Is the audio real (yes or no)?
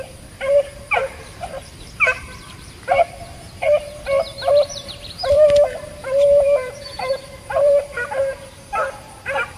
no